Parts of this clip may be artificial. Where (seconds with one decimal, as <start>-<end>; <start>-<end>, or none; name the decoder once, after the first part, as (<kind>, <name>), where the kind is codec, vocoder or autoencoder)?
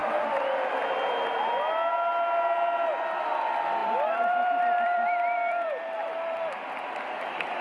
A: 0.0-0.8 (vocoder, BigVGAN v2); 3.8-7.6